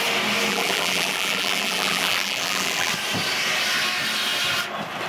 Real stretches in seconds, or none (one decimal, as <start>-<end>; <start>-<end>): 0.0-0.5; 2.9-5.1